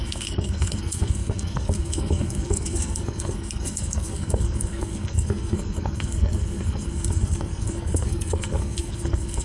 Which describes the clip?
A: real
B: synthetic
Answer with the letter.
B